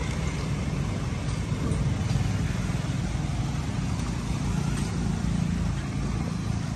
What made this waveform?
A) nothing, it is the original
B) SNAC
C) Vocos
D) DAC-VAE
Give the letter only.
A